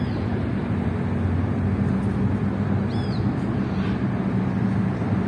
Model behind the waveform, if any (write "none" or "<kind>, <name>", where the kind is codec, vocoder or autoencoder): none